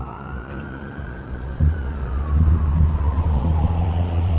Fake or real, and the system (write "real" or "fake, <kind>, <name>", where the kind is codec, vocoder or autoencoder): fake, vocoder, Vocos